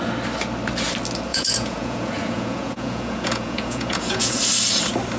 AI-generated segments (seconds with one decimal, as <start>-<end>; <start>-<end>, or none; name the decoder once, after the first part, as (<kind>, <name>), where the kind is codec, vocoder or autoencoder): 1.3-4.4 (vocoder, Vocos)